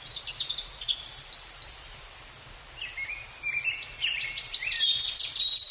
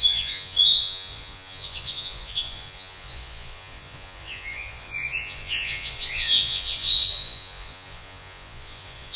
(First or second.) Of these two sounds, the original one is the first